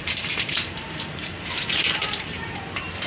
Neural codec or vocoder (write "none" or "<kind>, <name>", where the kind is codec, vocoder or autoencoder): vocoder, BigVGAN v2